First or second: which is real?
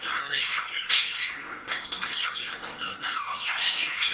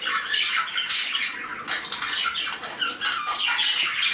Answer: second